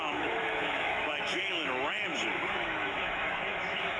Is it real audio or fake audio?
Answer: fake